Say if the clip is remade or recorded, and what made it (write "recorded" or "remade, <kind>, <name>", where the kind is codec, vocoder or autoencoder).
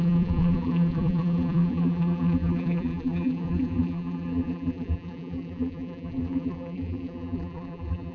remade, vocoder, BigVGAN v2